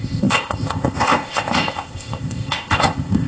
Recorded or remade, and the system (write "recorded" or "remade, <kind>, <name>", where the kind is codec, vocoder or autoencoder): remade, codec, ZipCodec